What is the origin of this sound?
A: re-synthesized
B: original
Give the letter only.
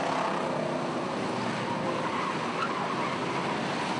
B